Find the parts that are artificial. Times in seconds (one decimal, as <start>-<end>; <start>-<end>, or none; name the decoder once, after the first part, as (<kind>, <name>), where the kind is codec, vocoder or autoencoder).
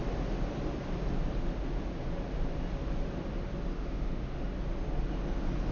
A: 3.7-4.4 (autoencoder, DAC-VAE)